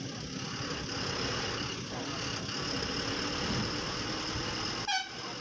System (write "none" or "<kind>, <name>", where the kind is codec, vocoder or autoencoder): none